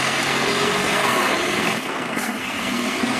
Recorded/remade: remade